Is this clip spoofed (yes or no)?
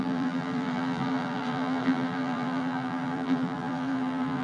yes